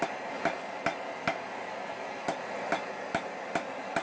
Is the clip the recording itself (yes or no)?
yes